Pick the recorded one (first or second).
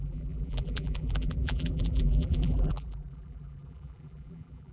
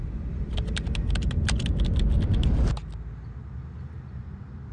second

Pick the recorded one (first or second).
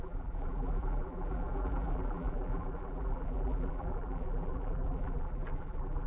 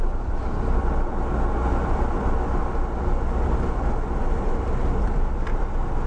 second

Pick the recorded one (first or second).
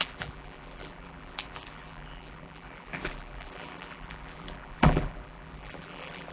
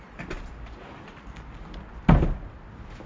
second